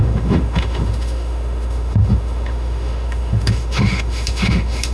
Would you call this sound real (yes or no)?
no